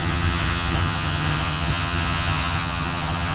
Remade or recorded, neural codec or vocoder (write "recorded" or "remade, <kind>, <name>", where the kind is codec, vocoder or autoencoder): remade, vocoder, HiFi-GAN